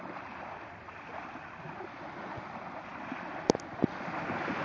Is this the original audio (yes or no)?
yes